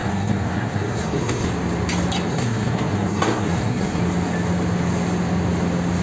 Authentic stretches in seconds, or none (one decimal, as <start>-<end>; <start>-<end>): 1.5-2.3; 4.0-6.0

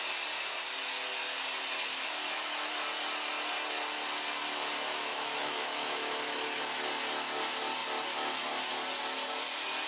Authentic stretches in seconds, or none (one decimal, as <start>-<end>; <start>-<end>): 0.0-1.8; 2.7-5.1; 6.6-9.9

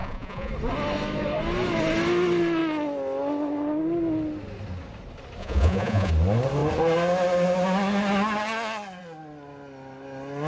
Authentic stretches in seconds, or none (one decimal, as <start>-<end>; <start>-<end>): 0.5-5.4; 6.1-10.5

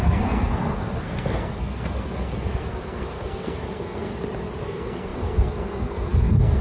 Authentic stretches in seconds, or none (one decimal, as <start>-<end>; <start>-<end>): 4.1-4.6

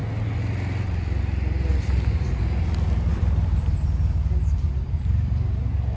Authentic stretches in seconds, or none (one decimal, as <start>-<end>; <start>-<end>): 0.0-1.7; 2.4-3.1; 5.6-6.0

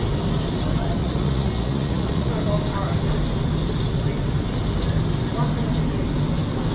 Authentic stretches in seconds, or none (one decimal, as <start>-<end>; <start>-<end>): 0.0-1.0; 2.3-6.7

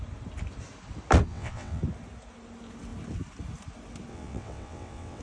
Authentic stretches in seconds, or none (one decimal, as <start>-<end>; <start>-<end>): 0.0-1.3; 1.8-4.1

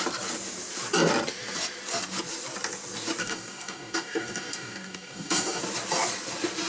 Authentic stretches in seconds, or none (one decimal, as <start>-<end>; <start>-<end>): 0.0-3.2; 5.6-6.7